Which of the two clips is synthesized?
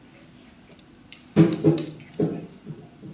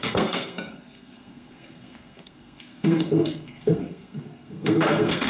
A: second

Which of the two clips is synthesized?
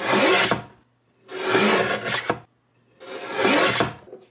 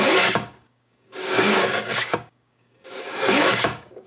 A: second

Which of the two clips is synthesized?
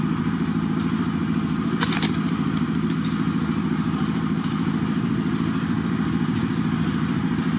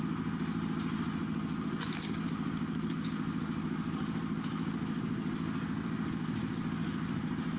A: first